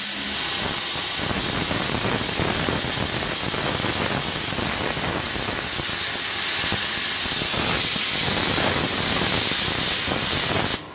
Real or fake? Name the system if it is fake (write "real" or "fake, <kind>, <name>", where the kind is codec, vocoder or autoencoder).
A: real